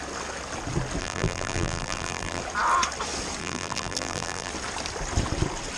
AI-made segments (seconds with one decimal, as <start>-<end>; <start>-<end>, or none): 1.0-2.4; 3.4-4.5